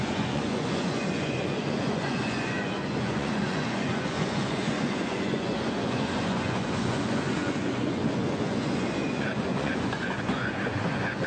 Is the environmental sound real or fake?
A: fake